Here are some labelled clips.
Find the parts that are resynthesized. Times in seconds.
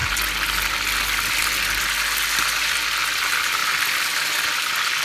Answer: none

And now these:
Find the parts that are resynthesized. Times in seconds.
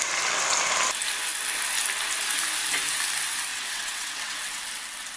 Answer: 3.5-4.6 (vocoder, WaveNeXt)